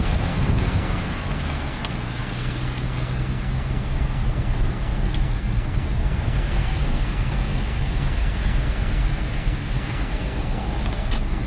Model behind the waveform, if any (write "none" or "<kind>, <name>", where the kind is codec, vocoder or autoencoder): codec, SNAC